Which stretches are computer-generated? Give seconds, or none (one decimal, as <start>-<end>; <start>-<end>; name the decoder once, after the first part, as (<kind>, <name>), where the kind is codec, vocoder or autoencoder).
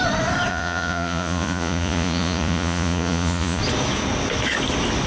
0.5-3.6 (vocoder, Vocos)